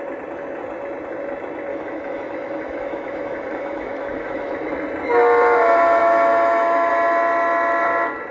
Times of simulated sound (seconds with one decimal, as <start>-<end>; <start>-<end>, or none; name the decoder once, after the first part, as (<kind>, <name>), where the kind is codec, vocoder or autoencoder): 1.7-4.7 (autoencoder, DAC-VAE); 6.0-6.9